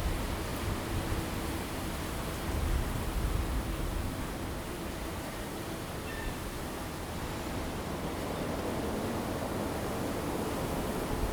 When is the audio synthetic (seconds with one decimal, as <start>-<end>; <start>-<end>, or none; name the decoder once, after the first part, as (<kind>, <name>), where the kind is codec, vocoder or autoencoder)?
none